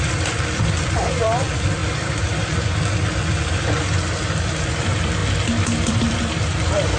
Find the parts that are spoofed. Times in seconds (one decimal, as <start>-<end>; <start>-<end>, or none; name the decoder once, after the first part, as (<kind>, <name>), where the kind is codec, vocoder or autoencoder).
0.0-1.8 (vocoder, BigVGAN v2); 4.7-5.2; 5.9-7.0